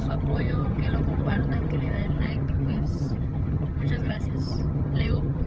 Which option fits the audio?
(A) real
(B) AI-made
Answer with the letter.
B